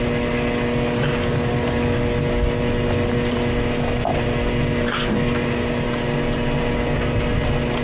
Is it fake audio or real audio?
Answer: real